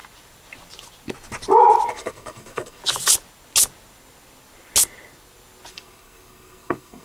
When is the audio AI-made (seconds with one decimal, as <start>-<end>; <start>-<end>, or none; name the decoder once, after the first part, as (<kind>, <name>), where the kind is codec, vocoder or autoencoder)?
1.9-2.8 (codec, SNAC); 5.7-7.0